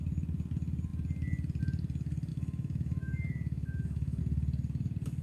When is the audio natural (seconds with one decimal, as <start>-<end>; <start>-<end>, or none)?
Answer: 0.0-2.3; 4.2-5.2